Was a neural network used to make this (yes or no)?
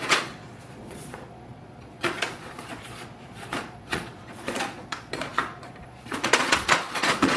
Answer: yes